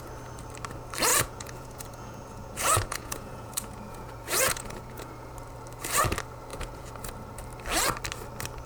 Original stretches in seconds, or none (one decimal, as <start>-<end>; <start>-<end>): 0.0-1.1; 5.3-6.5; 7.1-8.7